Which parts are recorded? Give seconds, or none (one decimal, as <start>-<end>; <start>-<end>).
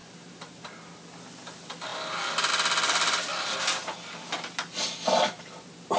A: 0.6-6.0